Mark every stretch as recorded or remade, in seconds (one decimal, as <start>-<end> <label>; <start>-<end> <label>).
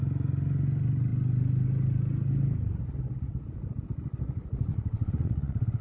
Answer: 0.0-4.7 recorded; 4.7-5.8 remade